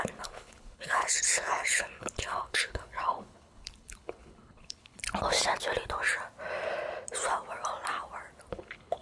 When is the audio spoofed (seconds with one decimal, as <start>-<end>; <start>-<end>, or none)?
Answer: 0.0-5.0; 8.5-9.0